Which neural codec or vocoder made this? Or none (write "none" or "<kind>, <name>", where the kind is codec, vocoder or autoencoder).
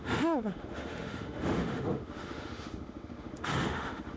autoencoder, DAC-VAE